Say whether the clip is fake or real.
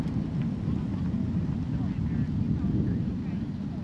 real